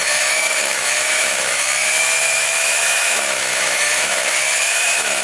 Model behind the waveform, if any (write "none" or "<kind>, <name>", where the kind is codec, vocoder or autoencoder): autoencoder, DAC-VAE